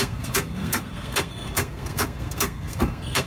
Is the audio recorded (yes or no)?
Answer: no